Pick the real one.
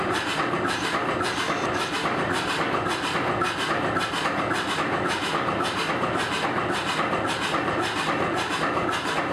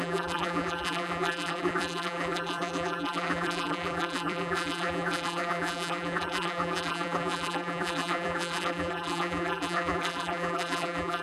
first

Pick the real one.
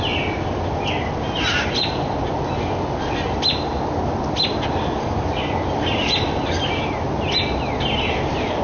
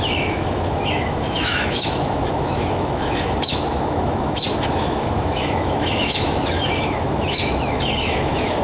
first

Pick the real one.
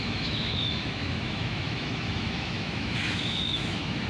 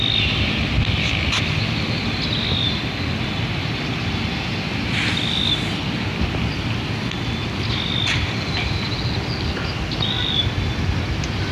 second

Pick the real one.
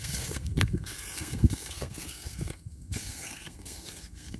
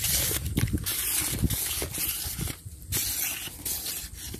second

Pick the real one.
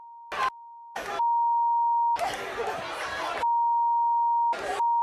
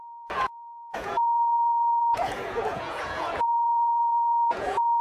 first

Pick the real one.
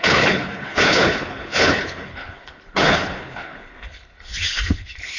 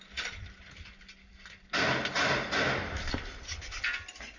second